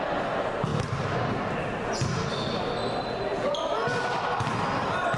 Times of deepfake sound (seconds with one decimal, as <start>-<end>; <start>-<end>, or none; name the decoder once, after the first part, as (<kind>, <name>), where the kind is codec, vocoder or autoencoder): none